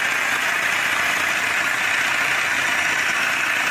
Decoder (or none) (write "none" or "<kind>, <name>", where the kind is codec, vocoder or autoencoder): none